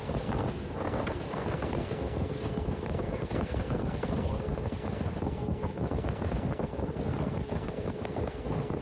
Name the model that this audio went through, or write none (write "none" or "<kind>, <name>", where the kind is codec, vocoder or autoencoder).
codec, SNAC